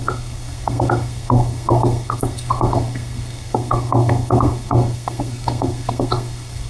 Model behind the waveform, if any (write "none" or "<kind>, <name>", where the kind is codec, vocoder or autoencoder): codec, SNAC